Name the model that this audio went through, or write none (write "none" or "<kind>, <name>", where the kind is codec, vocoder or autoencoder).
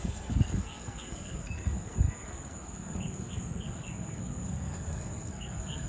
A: codec, SNAC